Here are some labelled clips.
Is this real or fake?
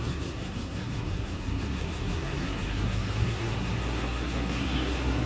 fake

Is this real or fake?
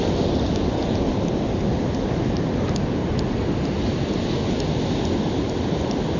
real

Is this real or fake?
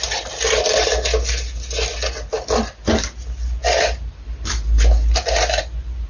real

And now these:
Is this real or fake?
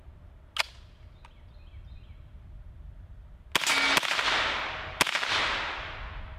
real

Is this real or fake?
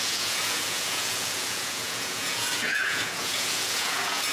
fake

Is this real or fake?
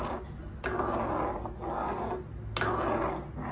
real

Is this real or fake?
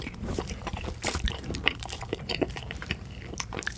fake